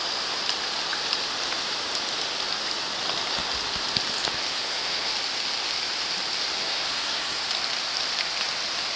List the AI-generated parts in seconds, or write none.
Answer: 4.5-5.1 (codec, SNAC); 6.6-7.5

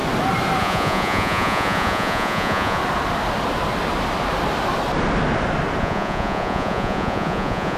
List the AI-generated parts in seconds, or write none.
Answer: 0.6-2.8 (vocoder, Vocos); 5.8-7.8

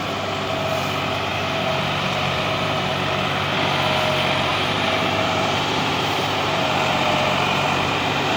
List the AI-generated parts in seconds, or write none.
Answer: 1.3-2.9 (vocoder, BigVGAN v2); 4.5-8.4

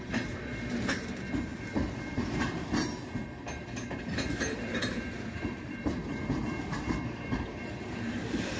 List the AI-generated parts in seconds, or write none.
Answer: 0.0-8.6 (vocoder, BigVGAN v2)

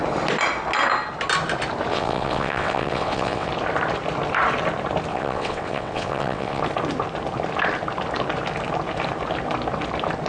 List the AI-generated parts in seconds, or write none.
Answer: 1.9-3.5 (vocoder, WaveNeXt); 5.1-6.6

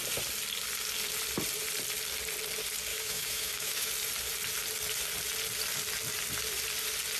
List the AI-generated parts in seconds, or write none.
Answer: 2.9-3.9 (autoencoder, DAC-VAE)

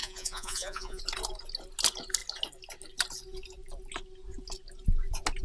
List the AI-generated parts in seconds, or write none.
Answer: 0.0-1.0 (vocoder, Vocos)